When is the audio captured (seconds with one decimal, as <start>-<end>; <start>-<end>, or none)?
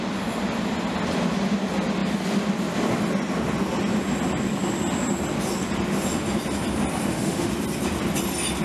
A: 0.0-7.0; 7.5-8.6